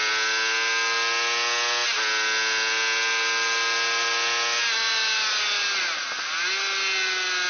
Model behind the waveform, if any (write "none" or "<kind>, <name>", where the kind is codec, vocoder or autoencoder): none